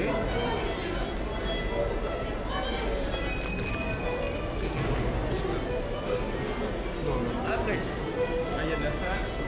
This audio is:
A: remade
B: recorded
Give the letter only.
B